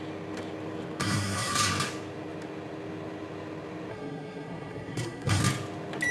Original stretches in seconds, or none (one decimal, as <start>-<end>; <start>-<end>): 0.0-1.0; 1.7-3.9; 5.4-6.1